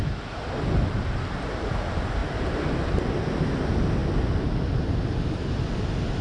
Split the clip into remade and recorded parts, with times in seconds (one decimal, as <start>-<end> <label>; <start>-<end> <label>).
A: 0.0-2.2 recorded; 2.2-2.8 remade; 2.8-6.2 recorded